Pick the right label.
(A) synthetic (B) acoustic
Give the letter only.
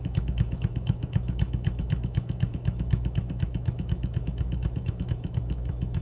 A